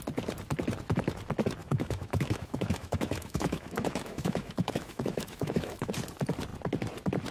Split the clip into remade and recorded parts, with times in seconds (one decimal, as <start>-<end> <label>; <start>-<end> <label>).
0.0-1.6 recorded; 1.6-5.9 remade; 5.9-7.3 recorded